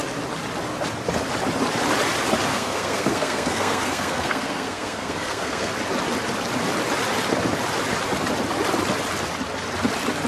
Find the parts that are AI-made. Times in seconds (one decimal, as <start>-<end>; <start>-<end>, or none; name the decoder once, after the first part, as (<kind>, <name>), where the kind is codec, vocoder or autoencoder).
2.5-5.7 (codec, SNAC)